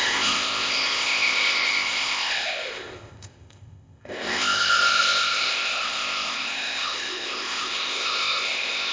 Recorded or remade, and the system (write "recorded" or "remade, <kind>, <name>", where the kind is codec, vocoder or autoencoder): remade, codec, ZipCodec